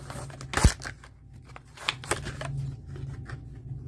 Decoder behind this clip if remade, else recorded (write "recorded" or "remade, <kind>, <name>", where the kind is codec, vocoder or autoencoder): recorded